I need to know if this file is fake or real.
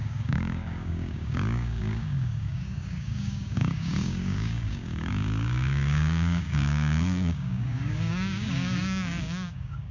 fake